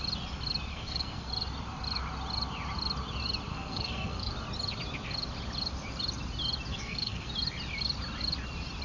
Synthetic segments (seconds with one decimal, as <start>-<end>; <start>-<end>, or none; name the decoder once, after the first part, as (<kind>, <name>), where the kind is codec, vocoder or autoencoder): 0.7-1.3 (codec, SNAC); 3.5-4.3; 6.7-7.3